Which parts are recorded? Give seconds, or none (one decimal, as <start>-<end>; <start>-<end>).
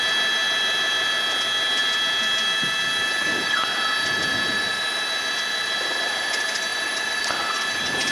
0.0-6.7; 7.3-8.1